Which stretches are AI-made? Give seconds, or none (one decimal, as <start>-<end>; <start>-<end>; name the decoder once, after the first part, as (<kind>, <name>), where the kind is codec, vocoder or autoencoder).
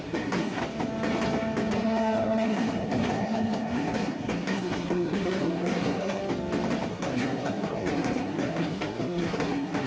0.0-0.6 (codec, SNAC); 1.7-6.2; 6.9-9.9